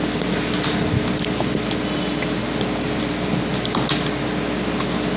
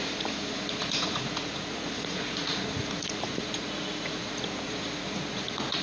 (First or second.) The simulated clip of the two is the second